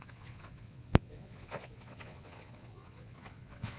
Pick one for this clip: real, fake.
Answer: fake